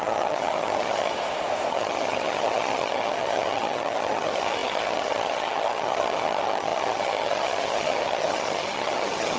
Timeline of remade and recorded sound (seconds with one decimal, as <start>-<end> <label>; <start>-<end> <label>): 0.0-1.1 remade; 1.1-1.7 recorded; 1.7-9.4 remade